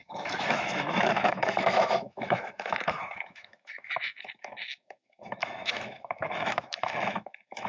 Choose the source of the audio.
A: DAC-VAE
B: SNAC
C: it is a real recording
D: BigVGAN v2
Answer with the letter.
A